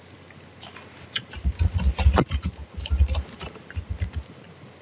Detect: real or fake real